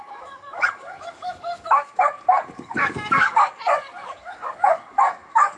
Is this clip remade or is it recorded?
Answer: remade